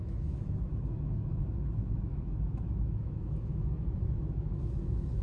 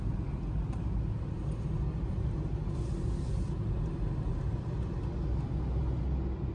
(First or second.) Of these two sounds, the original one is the second